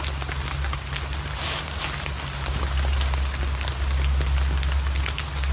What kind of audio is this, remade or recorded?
recorded